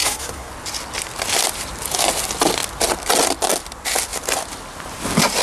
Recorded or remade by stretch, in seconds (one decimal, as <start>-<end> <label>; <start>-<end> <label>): 0.0-0.5 remade; 0.5-5.4 recorded